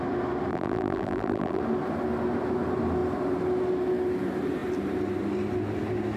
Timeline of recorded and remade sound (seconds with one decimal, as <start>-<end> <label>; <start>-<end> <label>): 0.0-0.5 recorded; 0.5-1.6 remade; 1.6-6.2 recorded